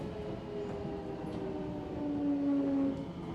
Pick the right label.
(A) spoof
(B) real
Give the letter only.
B